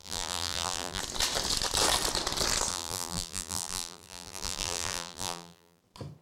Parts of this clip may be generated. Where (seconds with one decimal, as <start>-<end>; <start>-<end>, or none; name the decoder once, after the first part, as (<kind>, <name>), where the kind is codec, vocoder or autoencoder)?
0.0-1.0 (vocoder, BigVGAN v2); 2.7-5.8